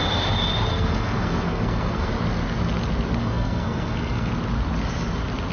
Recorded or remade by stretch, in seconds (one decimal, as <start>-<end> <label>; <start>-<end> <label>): 0.0-0.7 recorded; 0.7-2.1 remade; 2.1-3.2 recorded; 3.2-4.3 remade; 4.3-5.5 recorded